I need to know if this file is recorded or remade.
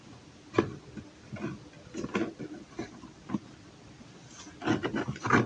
recorded